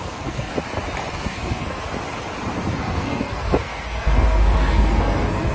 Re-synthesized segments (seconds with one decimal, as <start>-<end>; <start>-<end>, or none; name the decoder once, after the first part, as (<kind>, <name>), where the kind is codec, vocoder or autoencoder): 0.0-0.5 (codec, SNAC); 1.1-1.8; 2.7-5.5